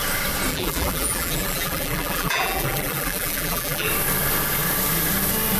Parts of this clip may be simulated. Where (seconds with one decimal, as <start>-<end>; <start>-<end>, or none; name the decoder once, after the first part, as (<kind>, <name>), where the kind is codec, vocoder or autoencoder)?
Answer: 0.5-3.9 (vocoder, BigVGAN v2)